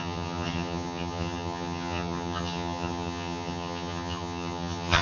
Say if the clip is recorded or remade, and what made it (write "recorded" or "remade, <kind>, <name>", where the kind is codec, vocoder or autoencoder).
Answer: remade, vocoder, HiFi-GAN